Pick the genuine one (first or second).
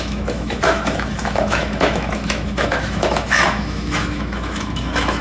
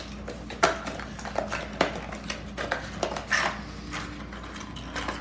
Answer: second